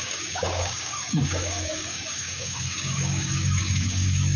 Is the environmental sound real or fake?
fake